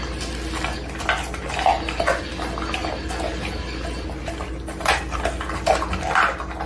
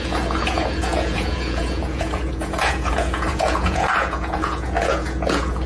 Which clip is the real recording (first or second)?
first